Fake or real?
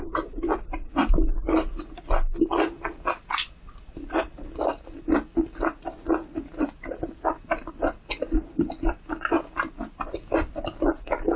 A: real